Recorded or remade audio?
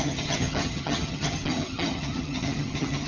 remade